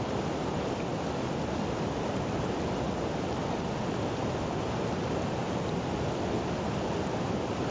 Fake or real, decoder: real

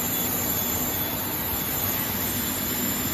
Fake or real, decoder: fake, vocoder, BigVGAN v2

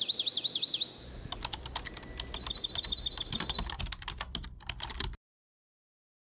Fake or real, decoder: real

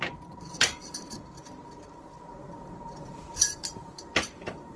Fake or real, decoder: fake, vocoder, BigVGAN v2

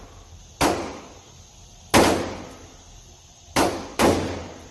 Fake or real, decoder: real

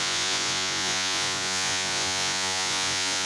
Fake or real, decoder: fake, vocoder, Vocos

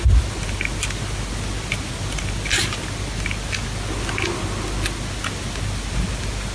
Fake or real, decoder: real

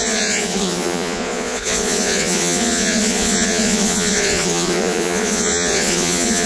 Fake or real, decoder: fake, vocoder, Vocos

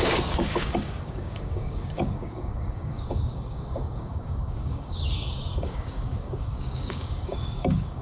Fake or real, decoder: fake, codec, DAC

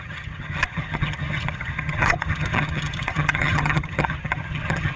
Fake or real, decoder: fake, vocoder, HiFi-GAN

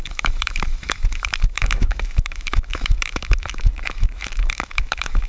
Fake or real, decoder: fake, autoencoder, DAC-VAE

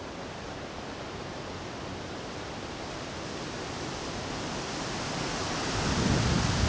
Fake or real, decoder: real